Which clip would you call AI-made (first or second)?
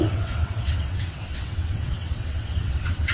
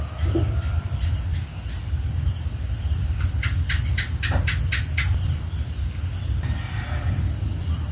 first